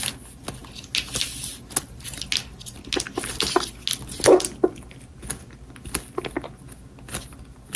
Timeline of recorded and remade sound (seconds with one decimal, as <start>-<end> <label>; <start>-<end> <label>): 0.0-7.8 recorded